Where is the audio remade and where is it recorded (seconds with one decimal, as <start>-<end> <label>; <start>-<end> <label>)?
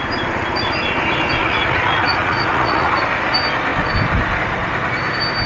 0.0-1.4 recorded; 1.4-3.0 remade; 3.0-5.5 recorded